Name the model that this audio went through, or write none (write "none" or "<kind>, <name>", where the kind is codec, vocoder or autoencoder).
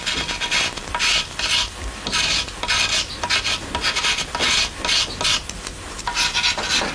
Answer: none